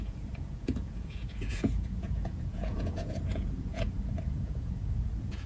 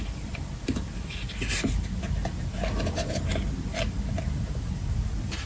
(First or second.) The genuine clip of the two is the second